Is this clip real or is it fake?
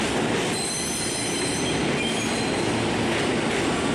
real